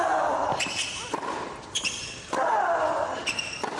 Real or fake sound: real